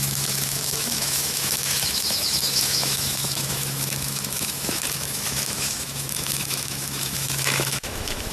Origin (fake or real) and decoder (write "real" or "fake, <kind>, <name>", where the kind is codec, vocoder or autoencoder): fake, autoencoder, DAC-VAE